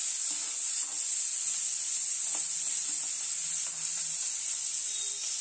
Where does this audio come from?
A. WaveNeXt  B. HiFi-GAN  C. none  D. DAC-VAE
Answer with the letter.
C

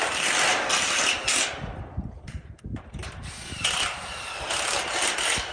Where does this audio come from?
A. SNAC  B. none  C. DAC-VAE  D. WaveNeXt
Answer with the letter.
B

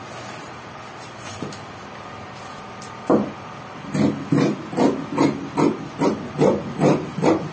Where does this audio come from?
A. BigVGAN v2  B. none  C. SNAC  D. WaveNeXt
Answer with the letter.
B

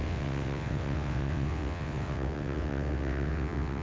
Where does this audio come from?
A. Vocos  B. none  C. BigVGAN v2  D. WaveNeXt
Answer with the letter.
D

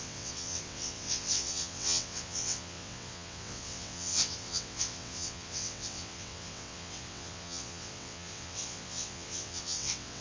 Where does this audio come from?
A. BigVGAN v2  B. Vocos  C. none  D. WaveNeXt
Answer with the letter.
D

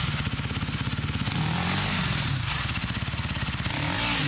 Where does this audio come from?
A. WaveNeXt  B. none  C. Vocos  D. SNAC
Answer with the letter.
B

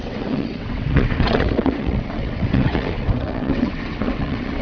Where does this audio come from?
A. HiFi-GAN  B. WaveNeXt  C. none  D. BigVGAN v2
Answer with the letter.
B